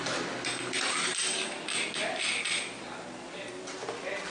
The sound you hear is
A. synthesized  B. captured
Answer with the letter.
B